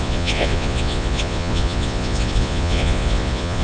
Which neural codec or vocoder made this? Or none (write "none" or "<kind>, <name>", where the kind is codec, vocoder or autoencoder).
vocoder, Vocos